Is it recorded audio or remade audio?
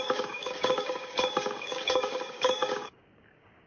remade